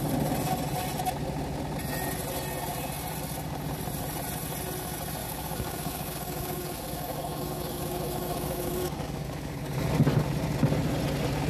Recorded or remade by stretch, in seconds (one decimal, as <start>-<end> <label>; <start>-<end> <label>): 0.0-5.2 recorded; 5.2-9.9 remade; 9.9-11.5 recorded